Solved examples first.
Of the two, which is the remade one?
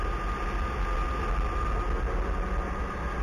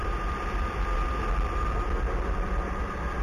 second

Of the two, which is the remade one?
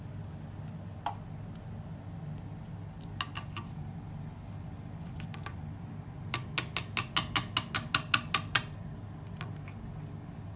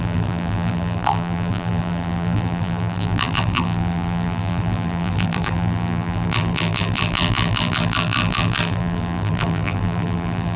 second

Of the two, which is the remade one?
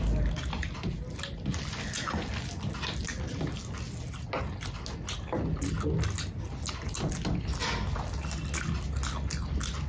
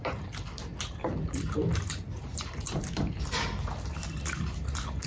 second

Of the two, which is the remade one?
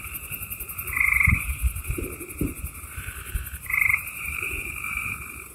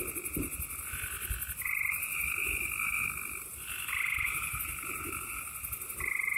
first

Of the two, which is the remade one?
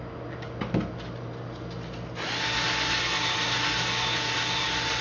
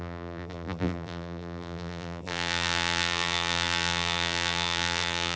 second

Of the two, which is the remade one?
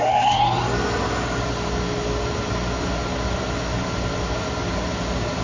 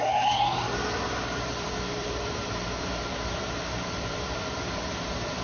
second